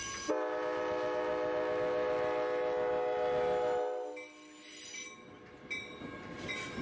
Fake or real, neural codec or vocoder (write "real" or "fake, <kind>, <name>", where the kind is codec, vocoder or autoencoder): real